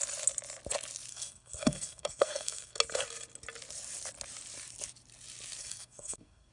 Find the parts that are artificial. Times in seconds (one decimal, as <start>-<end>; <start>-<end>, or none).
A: 1.1-2.8; 5.6-6.5